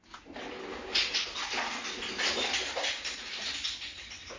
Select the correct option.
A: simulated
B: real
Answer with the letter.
B